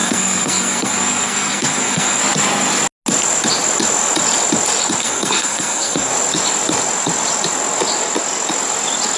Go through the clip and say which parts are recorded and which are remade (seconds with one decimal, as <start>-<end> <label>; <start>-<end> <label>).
0.0-2.2 remade; 2.2-5.0 recorded; 5.0-6.1 remade; 6.1-9.2 recorded

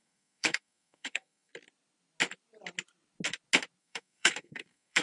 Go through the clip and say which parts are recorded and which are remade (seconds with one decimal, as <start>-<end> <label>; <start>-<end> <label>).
0.0-1.5 remade; 1.5-3.8 recorded; 3.8-5.0 remade

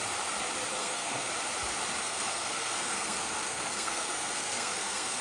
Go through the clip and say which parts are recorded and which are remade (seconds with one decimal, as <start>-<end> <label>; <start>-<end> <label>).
0.0-0.8 recorded; 0.8-1.3 remade; 1.3-2.0 recorded; 2.0-5.2 remade

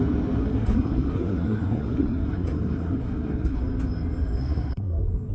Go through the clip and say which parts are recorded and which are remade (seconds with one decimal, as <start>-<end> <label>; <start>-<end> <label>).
0.0-0.4 recorded; 0.4-3.6 remade; 3.6-4.4 recorded; 4.4-5.3 remade

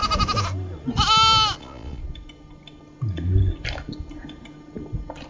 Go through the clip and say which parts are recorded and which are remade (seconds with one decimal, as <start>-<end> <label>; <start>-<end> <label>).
0.0-1.6 recorded; 1.6-2.0 remade; 2.0-5.3 recorded